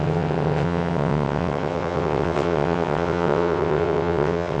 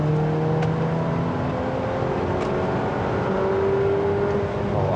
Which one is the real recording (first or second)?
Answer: second